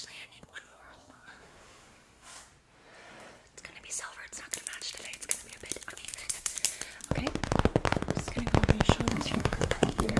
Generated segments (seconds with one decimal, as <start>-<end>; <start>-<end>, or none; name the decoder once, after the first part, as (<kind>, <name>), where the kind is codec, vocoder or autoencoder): 0.0-2.5 (codec, SNAC); 5.9-6.5; 9.1-10.2